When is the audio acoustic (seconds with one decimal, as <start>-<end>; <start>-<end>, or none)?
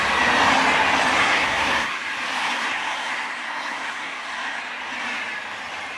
0.0-1.2; 2.0-2.4; 4.6-6.0